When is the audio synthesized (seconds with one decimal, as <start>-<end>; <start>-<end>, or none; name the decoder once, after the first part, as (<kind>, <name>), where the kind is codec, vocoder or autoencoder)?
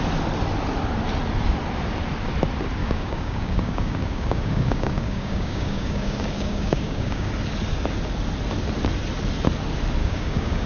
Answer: 2.8-7.3 (codec, DAC); 10.0-10.7